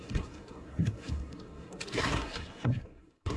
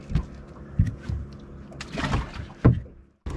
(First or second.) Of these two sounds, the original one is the second